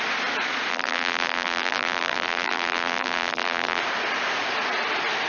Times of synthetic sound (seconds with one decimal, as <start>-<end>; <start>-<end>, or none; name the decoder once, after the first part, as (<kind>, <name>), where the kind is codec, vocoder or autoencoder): 0.7-3.8 (vocoder, BigVGAN v2)